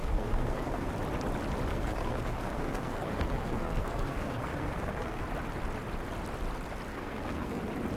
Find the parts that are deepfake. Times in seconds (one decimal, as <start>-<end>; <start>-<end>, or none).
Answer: 0.0-0.9; 1.7-5.2; 6.9-7.6